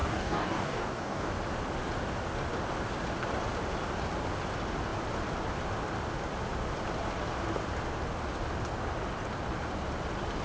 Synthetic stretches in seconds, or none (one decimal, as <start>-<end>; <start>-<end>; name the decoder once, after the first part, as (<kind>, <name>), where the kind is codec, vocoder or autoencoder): 0.0-1.3 (codec, DAC)